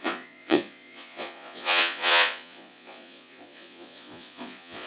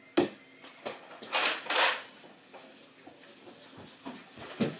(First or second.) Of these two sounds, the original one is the second